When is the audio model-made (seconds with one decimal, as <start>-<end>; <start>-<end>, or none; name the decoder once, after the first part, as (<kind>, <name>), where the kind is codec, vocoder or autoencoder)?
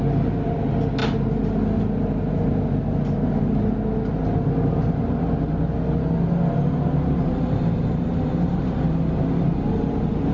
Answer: none